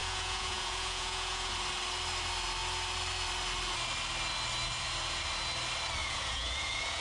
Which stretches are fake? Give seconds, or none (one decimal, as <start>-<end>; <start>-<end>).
0.0-1.5; 6.0-7.0